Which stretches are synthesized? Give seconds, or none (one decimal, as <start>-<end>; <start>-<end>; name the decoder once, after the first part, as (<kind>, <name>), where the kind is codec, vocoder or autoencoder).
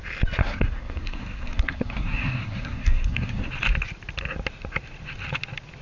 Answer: 0.4-3.5 (codec, SNAC)